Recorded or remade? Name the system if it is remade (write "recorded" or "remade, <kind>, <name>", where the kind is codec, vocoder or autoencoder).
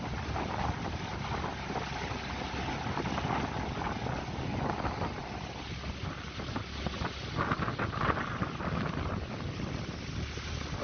recorded